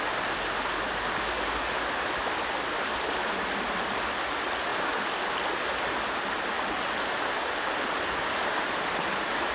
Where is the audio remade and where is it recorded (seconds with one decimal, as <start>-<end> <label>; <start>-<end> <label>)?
0.0-9.5 recorded